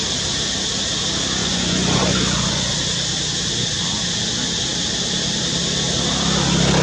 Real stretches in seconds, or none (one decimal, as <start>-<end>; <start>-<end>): 0.0-1.4; 2.7-6.8